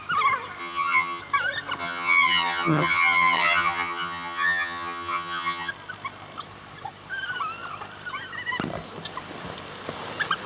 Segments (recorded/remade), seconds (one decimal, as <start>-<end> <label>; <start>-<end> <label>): 0.0-0.6 recorded; 0.6-1.2 remade; 1.2-1.8 recorded; 1.8-5.7 remade; 5.7-10.5 recorded